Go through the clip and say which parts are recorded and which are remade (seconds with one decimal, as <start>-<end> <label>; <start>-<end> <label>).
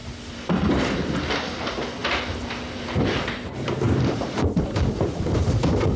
0.0-1.2 remade; 1.2-2.0 recorded; 2.0-5.6 remade; 5.6-6.0 recorded